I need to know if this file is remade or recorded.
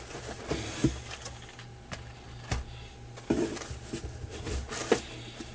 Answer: recorded